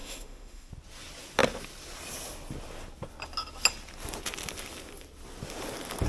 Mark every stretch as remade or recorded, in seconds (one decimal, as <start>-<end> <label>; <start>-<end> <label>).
0.0-0.7 remade; 0.7-6.1 recorded